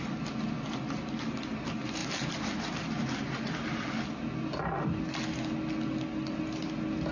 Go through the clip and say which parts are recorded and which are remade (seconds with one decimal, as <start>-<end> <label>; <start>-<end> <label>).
0.0-7.1 recorded